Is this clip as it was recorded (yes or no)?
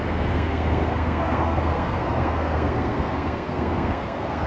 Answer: no